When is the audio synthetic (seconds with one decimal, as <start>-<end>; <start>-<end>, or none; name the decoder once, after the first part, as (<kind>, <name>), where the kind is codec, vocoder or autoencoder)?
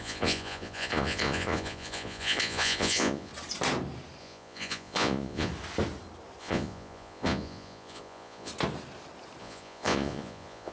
0.0-3.3 (vocoder, Vocos); 4.2-5.5; 6.4-8.5; 9.4-10.7